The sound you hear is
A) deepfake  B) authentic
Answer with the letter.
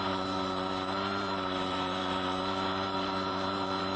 A